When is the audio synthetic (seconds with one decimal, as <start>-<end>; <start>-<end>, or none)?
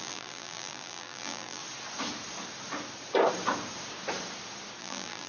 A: 0.0-1.6; 4.8-5.3